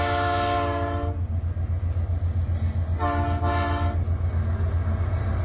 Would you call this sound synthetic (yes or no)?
no